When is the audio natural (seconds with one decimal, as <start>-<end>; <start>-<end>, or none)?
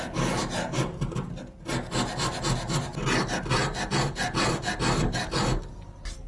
0.0-0.4; 1.4-6.3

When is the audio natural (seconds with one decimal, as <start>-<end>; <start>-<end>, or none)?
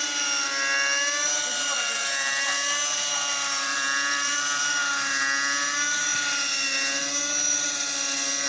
0.0-3.7; 4.8-8.5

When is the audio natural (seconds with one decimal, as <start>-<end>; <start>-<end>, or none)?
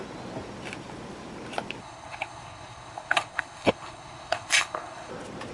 0.0-1.8; 5.1-5.5